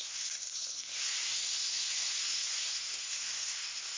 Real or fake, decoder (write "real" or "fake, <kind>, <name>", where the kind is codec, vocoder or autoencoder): fake, codec, SNAC